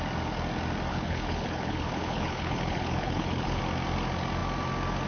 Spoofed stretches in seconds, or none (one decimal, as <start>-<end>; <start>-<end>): 0.9-3.6